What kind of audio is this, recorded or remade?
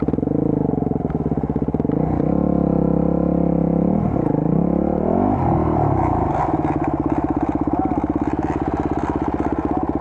recorded